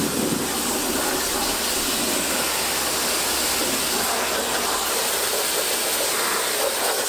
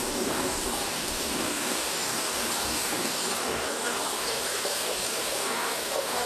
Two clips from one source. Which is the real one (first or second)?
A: first